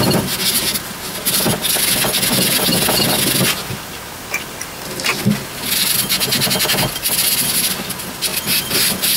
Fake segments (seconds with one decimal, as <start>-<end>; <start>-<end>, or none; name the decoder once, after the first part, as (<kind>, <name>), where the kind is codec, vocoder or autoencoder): 8.3-9.2 (vocoder, BigVGAN v2)